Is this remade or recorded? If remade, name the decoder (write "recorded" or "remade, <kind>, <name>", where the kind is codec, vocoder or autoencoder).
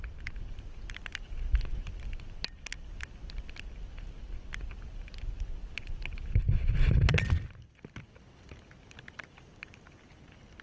recorded